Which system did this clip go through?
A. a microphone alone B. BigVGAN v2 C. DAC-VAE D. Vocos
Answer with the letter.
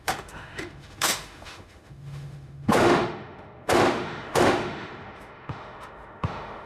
C